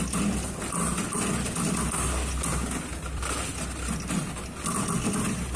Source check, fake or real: real